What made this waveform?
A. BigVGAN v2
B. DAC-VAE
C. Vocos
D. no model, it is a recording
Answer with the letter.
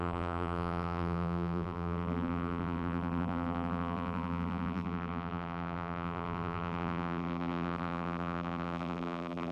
A